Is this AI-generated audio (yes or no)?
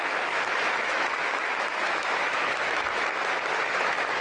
yes